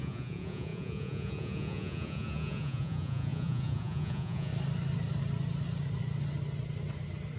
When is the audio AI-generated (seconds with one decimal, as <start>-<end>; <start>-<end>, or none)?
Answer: 0.0-4.5